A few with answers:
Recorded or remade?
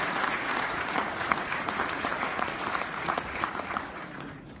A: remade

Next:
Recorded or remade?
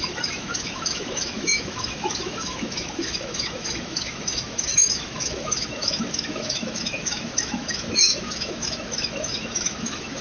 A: remade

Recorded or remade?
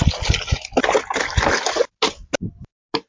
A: recorded